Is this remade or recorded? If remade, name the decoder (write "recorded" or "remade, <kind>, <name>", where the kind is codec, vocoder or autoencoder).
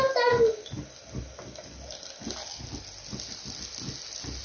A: recorded